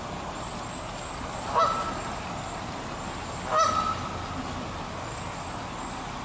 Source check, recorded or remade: recorded